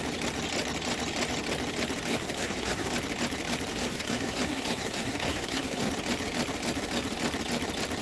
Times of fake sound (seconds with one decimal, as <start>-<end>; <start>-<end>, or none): 2.1-2.9; 3.7-5.9